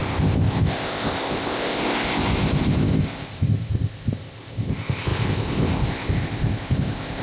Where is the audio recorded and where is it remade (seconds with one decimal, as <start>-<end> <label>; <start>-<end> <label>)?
0.0-7.2 remade